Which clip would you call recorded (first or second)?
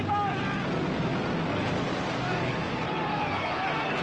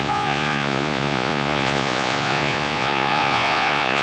first